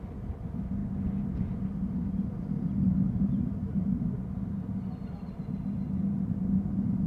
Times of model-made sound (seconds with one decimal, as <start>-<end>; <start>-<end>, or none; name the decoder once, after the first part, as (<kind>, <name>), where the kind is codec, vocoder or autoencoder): none